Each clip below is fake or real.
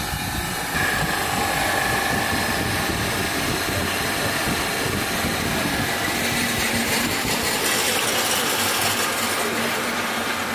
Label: real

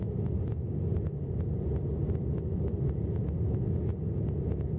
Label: real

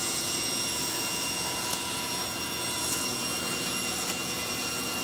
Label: fake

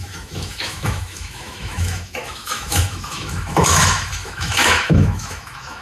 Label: fake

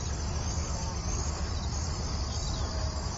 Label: real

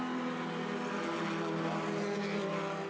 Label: real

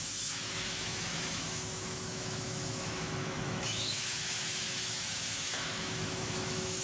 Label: fake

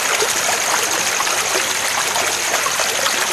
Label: real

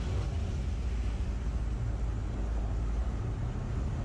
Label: real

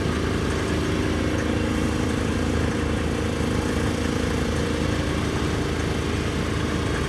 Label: real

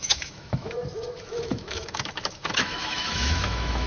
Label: fake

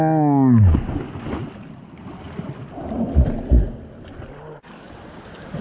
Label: real